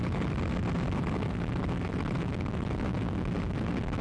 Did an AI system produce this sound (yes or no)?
no